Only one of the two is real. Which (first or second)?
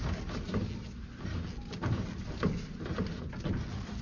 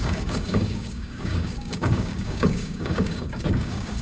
first